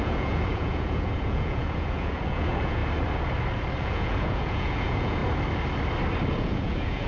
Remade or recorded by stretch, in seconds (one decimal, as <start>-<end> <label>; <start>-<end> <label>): 0.0-2.8 remade; 2.8-3.8 recorded; 3.8-5.2 remade; 5.2-6.3 recorded; 6.3-7.1 remade